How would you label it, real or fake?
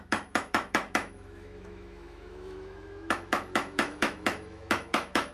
fake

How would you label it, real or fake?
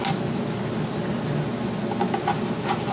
real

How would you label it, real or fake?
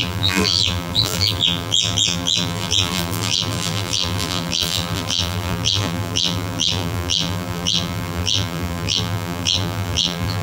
fake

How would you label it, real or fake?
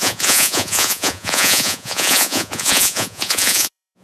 fake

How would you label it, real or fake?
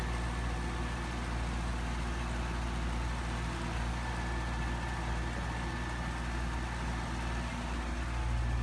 real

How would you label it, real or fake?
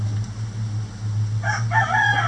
real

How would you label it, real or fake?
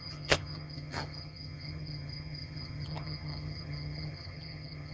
fake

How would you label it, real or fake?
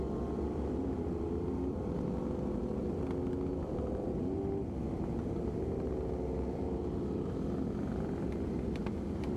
real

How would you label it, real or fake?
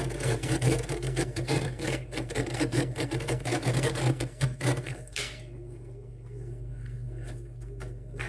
fake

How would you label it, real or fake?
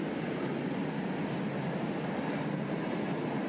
real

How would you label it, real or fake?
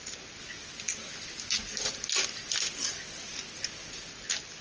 real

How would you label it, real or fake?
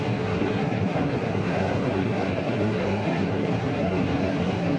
fake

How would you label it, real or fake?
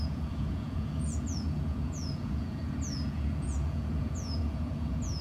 fake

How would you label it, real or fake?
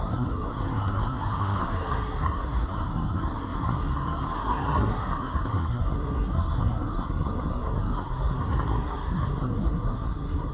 fake